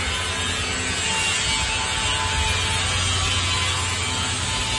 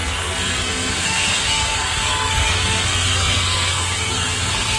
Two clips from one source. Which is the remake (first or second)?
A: second